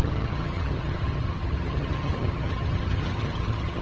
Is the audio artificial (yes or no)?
yes